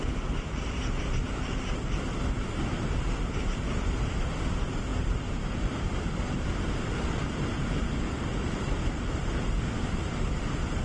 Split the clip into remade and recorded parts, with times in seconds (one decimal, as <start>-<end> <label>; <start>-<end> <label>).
0.0-10.8 recorded